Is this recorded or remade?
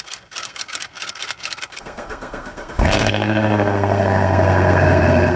remade